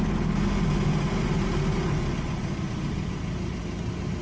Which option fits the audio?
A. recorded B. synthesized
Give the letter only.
A